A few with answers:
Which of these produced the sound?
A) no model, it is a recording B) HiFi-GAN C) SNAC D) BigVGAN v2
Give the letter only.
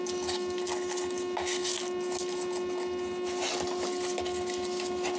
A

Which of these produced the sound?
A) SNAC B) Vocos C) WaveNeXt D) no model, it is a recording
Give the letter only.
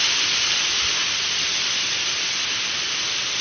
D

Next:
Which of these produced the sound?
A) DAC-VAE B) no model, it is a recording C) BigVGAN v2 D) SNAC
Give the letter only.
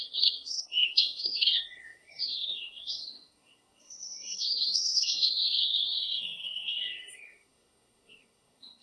D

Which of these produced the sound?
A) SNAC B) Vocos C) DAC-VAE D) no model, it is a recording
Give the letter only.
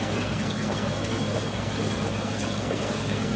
A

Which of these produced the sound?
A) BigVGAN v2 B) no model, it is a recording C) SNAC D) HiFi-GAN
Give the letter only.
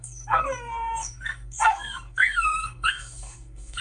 C